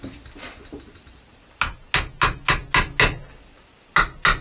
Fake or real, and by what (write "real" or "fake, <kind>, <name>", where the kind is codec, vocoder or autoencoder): real